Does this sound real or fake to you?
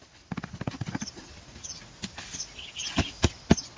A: real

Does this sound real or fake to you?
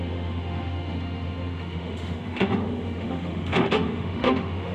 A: fake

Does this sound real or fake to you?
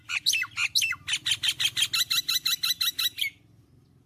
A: real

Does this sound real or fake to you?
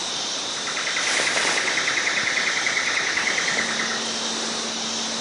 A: real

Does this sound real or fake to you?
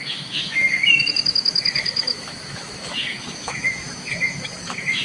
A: fake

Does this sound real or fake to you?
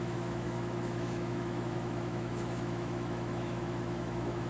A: fake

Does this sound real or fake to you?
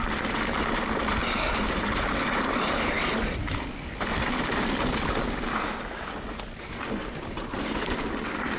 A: real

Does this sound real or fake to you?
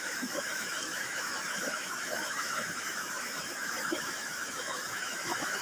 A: fake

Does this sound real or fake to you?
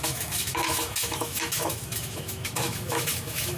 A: fake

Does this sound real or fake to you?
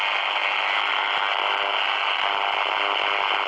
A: real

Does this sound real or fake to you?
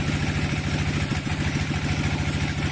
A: real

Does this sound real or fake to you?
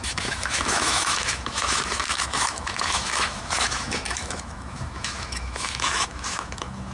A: fake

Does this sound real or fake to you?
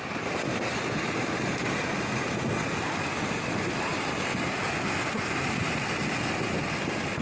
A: real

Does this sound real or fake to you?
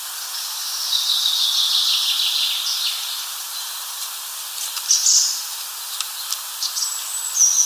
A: real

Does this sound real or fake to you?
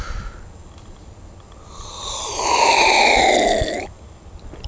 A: real